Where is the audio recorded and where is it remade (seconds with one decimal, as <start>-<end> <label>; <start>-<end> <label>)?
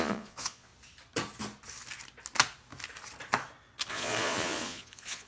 0.0-0.7 remade; 0.7-3.9 recorded; 3.9-5.3 remade